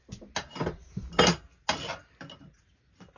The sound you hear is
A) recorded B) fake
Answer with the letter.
A